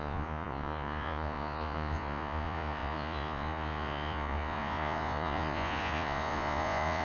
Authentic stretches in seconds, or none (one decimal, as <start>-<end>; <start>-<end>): none